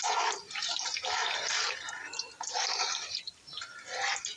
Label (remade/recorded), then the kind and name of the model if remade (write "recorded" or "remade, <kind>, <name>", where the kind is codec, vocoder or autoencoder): recorded